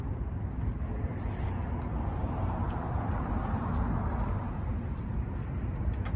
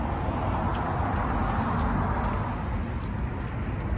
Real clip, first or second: second